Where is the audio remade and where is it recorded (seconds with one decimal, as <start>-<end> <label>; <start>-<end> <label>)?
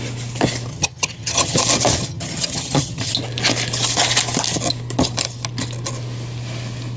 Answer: 0.0-0.7 recorded; 0.7-1.6 remade; 1.6-2.0 recorded; 2.0-3.1 remade; 3.1-7.0 recorded